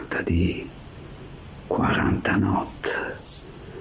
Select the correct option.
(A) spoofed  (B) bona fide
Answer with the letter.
B